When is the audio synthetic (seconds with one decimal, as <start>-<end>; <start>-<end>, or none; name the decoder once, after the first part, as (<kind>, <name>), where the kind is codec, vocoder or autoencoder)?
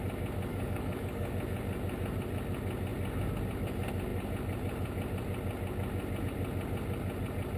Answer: 0.5-1.3 (codec, DAC)